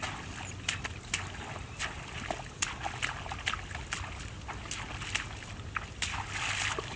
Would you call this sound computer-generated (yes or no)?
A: no